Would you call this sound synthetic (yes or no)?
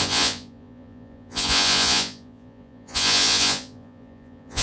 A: yes